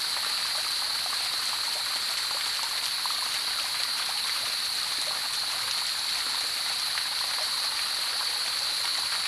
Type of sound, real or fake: real